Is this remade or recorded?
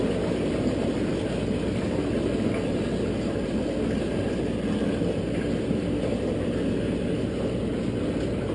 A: recorded